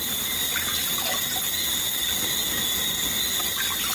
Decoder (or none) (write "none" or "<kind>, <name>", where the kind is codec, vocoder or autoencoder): none